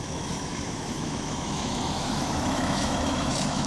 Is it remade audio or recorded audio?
remade